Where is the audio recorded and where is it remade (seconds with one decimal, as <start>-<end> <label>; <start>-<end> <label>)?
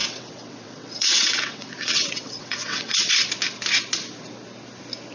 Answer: 0.0-3.1 remade; 3.1-5.1 recorded